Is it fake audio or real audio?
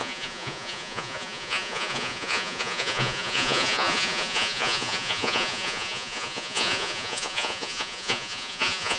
fake